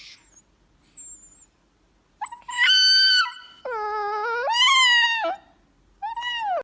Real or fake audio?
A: real